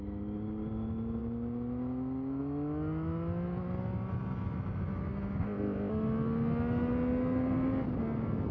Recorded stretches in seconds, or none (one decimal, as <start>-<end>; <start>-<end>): 0.0-5.4; 5.9-8.5